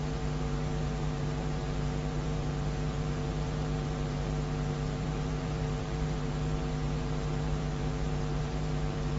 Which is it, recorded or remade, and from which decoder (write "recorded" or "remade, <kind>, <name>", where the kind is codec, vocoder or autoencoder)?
remade, vocoder, BigVGAN v2